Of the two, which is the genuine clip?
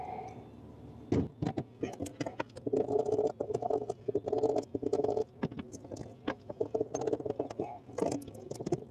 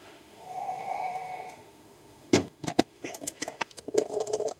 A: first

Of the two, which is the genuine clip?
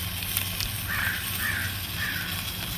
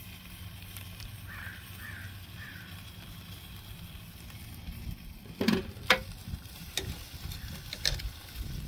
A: first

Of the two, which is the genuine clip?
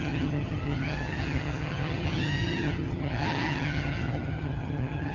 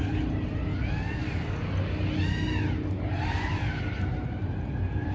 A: second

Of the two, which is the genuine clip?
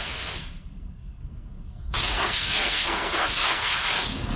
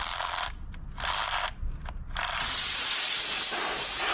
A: second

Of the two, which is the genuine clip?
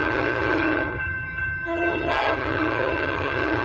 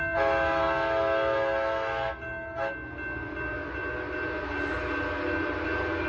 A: second